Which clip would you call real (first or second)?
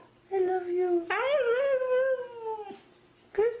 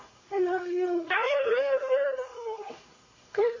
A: first